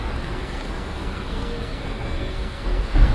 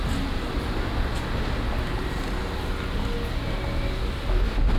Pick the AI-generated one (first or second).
first